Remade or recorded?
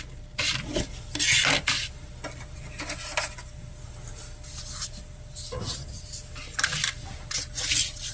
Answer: recorded